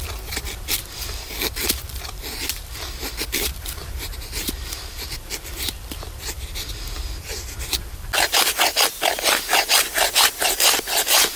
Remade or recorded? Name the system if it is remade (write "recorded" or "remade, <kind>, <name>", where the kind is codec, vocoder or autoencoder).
remade, vocoder, BigVGAN v2